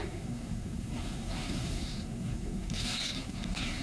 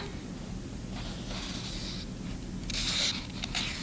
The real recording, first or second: second